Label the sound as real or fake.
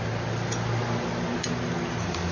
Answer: real